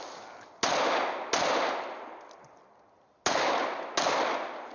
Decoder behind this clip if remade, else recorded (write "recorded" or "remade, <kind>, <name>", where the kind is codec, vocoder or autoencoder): recorded